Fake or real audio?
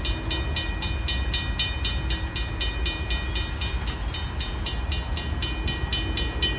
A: real